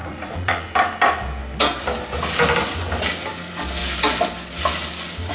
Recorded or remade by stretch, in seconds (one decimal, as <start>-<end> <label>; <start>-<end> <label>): 0.0-0.7 remade; 0.7-5.3 recorded